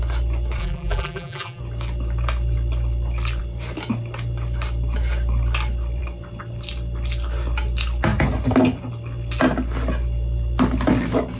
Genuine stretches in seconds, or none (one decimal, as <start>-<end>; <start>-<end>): 0.0-0.6; 1.6-11.4